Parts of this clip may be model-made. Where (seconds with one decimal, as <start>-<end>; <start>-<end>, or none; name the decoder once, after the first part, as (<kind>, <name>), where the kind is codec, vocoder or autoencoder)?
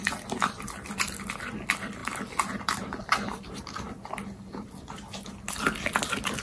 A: none